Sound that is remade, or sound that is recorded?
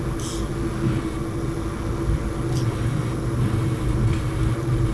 recorded